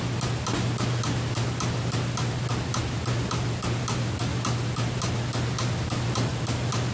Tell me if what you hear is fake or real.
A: real